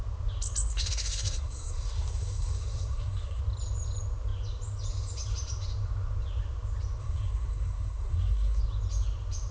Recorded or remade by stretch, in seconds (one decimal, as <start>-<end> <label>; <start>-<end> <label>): 0.0-0.7 recorded; 0.7-3.4 remade; 3.4-7.0 recorded; 7.0-8.6 remade; 8.6-9.5 recorded